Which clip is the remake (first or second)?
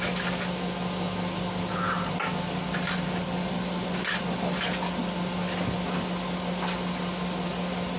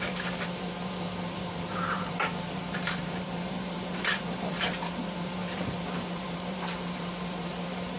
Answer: second